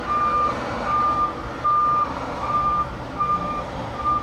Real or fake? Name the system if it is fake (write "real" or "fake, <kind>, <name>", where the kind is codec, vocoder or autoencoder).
real